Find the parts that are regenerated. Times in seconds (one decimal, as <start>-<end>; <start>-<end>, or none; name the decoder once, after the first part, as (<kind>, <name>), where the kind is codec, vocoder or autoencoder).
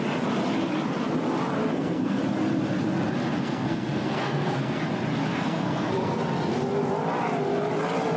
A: 1.7-2.2 (codec, SNAC); 3.3-4.8; 5.3-6.2